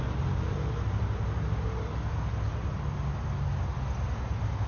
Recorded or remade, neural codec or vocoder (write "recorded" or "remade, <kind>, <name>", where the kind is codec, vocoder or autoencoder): recorded